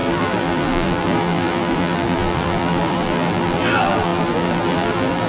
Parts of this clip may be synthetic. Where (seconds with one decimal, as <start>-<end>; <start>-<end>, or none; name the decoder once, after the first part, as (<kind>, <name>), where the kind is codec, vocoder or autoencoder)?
0.0-5.3 (vocoder, BigVGAN v2)